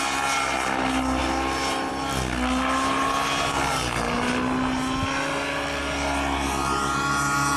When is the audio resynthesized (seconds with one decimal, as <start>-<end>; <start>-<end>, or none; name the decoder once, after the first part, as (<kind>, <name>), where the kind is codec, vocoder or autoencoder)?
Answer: none